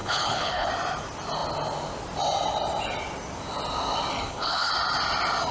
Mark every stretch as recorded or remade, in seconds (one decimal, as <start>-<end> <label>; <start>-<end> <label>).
0.0-0.7 remade; 0.7-4.1 recorded; 4.1-4.7 remade; 4.7-5.5 recorded